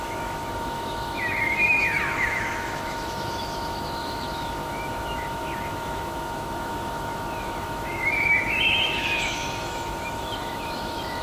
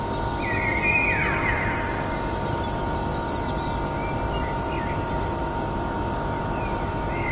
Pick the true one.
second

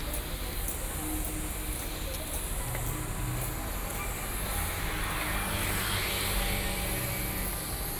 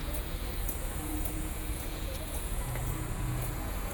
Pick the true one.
first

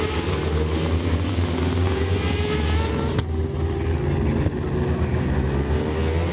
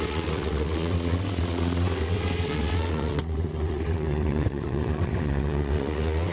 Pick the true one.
first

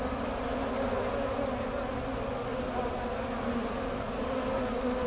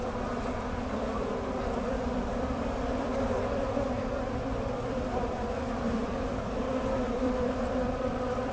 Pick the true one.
first